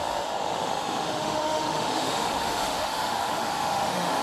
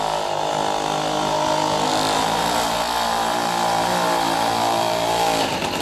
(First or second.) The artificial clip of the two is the first